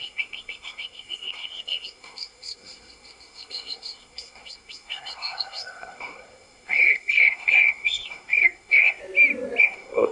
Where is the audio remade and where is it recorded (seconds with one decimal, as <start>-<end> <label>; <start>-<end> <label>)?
0.0-9.0 remade; 9.0-9.6 recorded; 9.6-10.1 remade